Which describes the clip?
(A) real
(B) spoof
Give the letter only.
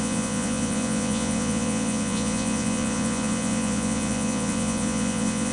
B